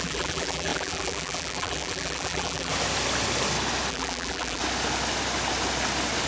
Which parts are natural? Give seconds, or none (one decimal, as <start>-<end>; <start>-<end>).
2.7-3.9; 4.6-6.3